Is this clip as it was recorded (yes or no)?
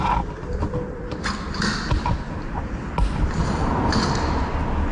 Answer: yes